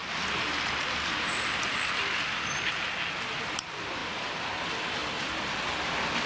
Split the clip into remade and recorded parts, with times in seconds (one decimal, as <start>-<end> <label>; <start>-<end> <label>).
0.0-0.5 remade; 0.5-4.0 recorded; 4.0-4.6 remade; 4.6-5.0 recorded; 5.0-5.7 remade; 5.7-6.3 recorded